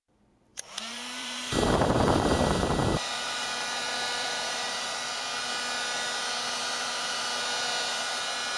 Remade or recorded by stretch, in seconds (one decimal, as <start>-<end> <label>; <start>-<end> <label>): 0.0-0.5 recorded; 0.5-5.0 remade; 5.0-8.6 recorded